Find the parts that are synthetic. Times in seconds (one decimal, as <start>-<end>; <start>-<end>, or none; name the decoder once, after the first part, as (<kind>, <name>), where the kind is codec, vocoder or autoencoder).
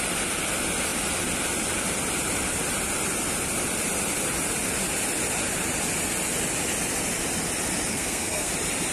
7.9-8.5 (codec, SNAC)